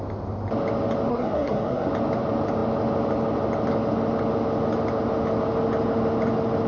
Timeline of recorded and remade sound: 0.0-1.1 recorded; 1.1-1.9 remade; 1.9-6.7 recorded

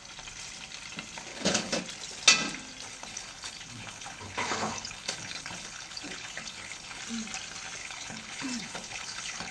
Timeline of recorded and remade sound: 0.0-1.3 recorded; 1.3-1.8 remade; 1.8-2.9 recorded; 2.9-7.0 remade; 7.0-7.8 recorded; 7.8-9.5 remade